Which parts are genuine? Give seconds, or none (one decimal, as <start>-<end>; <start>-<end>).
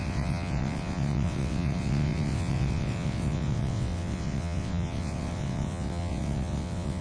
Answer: none